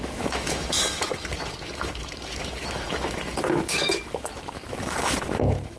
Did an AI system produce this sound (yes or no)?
yes